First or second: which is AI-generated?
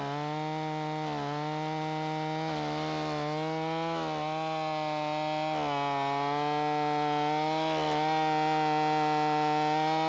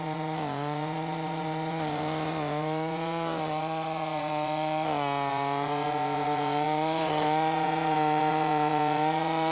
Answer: second